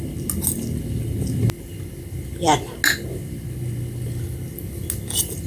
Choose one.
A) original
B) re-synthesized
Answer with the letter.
A